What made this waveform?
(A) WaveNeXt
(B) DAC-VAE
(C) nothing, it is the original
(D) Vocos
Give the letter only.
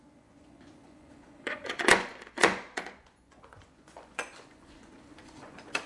D